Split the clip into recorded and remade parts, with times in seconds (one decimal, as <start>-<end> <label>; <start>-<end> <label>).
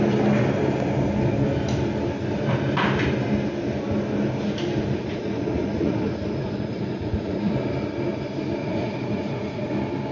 0.0-5.0 recorded; 5.0-7.5 remade; 7.5-8.6 recorded; 8.6-9.7 remade; 9.7-10.1 recorded